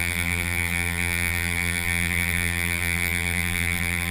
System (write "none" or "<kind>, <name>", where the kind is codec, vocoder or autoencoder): vocoder, BigVGAN v2